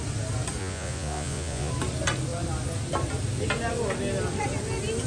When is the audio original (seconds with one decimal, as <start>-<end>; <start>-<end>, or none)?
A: 0.0-0.6; 1.7-5.1

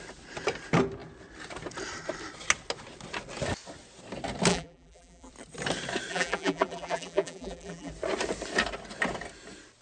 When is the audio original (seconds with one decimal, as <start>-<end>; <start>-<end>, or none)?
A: 0.0-4.5; 5.3-6.1; 7.9-9.8

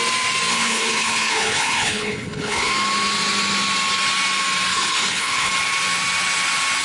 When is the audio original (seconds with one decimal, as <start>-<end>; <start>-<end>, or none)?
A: 0.0-0.5; 2.7-4.7; 5.5-6.8

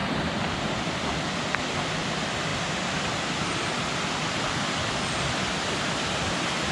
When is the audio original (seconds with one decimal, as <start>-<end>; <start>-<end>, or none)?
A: 0.6-6.7

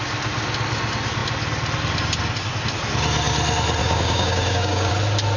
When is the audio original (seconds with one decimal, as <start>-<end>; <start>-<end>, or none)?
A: 0.0-3.8; 4.9-5.4

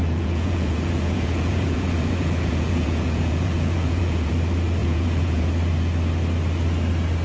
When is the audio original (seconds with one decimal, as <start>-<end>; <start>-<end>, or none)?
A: 4.3-4.8; 5.5-7.2

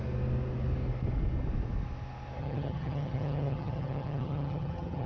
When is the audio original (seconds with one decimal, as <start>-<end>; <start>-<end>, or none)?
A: 0.0-2.4

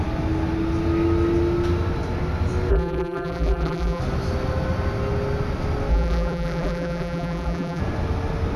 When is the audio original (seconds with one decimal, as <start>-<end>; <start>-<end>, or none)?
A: 0.0-2.7; 4.0-5.9; 7.8-8.6